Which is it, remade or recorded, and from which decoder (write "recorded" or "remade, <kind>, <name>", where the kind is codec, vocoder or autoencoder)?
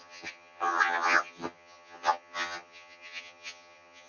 remade, vocoder, HiFi-GAN